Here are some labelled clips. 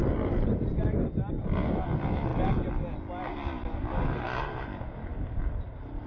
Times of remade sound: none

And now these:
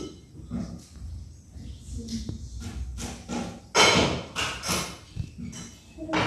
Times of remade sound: none